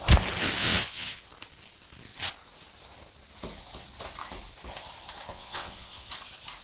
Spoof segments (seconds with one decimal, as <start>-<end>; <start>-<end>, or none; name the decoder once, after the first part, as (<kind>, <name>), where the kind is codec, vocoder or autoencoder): 0.6-1.3 (vocoder, WaveNeXt); 5.3-6.1